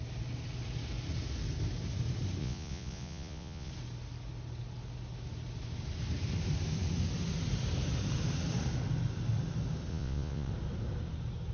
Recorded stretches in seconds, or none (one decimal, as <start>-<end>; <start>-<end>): 0.0-2.4; 3.7-9.9; 10.5-11.5